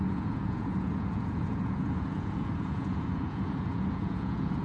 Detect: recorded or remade remade